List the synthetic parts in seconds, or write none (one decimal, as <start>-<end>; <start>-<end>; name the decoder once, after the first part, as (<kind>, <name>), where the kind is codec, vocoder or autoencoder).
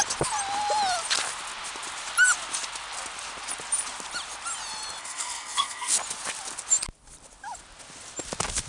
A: 5.0-5.9 (codec, SNAC)